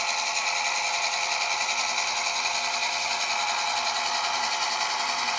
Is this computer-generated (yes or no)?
no